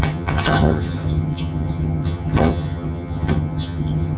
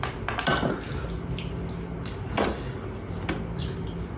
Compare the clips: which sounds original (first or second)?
second